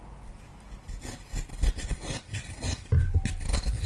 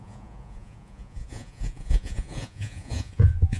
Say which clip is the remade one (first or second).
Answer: second